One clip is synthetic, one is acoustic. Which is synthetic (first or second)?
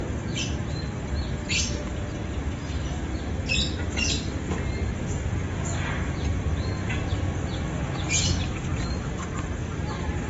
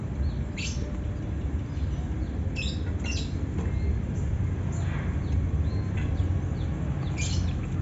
first